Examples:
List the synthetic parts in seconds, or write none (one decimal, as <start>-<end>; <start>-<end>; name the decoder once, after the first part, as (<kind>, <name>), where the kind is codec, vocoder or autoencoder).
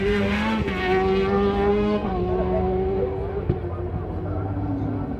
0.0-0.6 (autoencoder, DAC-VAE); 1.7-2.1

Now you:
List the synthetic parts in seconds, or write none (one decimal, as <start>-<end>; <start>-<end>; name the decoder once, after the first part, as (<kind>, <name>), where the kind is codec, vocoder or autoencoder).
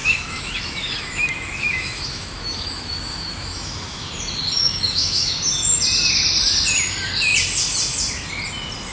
0.0-4.1 (autoencoder, DAC-VAE); 4.6-5.3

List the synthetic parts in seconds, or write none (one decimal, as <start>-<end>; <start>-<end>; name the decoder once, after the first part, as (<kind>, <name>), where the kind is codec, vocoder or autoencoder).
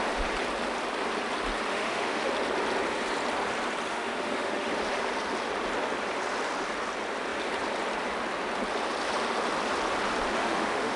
1.7-2.3 (autoencoder, DAC-VAE); 3.9-4.7; 10.4-11.0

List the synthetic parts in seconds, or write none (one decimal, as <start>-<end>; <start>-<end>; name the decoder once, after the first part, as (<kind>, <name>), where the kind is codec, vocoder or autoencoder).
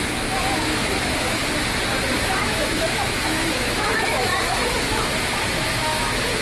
0.0-1.4 (autoencoder, DAC-VAE); 2.3-6.4